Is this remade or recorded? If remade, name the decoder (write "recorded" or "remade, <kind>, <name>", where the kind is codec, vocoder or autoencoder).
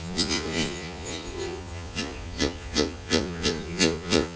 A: remade, vocoder, Vocos